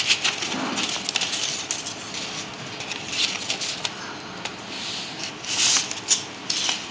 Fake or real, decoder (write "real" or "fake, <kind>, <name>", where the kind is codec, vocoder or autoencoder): real